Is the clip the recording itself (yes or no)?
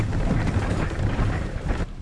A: yes